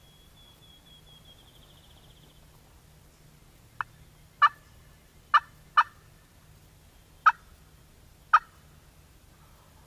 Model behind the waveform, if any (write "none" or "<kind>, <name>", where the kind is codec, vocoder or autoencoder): none